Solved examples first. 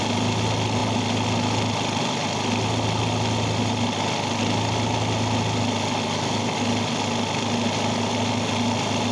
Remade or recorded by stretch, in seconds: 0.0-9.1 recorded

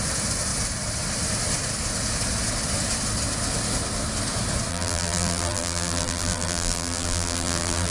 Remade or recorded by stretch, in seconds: 0.0-4.7 recorded; 4.7-7.9 remade

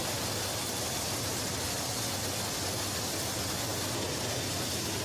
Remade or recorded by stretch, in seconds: 0.0-5.0 recorded

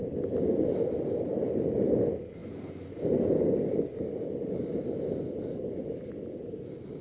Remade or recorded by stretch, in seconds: 0.0-7.0 recorded

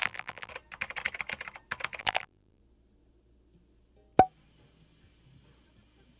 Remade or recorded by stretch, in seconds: 0.0-0.5 remade; 0.5-2.0 recorded; 2.0-2.6 remade; 2.6-6.2 recorded

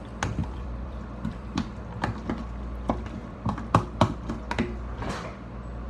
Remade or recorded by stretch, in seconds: 0.0-0.4 recorded; 0.4-1.8 remade; 1.8-3.2 recorded; 3.2-4.3 remade; 4.3-5.9 recorded